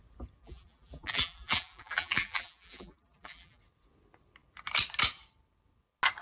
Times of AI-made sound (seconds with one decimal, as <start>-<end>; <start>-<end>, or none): 0.4-3.6